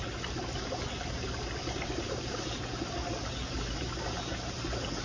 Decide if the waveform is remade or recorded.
recorded